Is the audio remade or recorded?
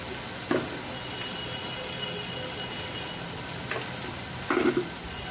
recorded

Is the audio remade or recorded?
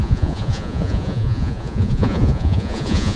remade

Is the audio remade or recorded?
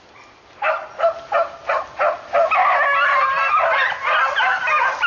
recorded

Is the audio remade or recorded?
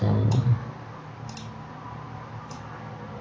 recorded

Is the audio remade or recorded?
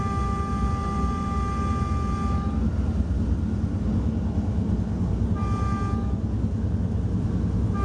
recorded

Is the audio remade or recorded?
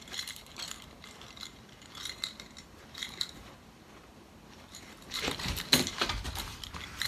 remade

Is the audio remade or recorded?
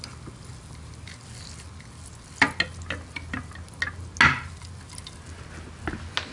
recorded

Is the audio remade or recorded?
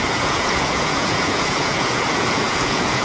remade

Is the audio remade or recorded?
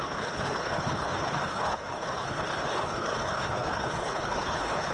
remade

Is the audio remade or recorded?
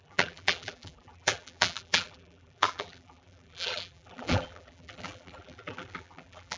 remade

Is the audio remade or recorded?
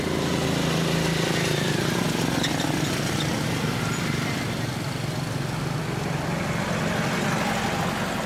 recorded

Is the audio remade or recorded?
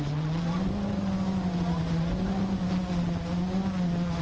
recorded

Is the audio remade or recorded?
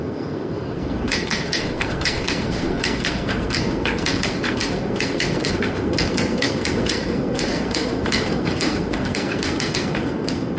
remade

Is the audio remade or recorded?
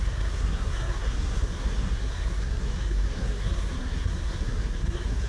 remade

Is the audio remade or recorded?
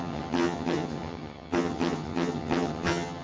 remade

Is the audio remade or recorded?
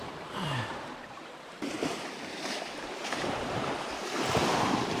remade